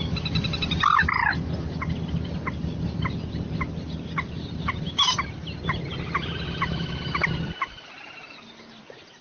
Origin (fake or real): real